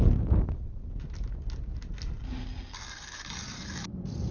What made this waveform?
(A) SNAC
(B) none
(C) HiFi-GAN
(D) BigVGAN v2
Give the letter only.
B